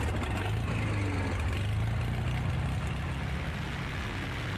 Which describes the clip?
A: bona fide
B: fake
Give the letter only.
A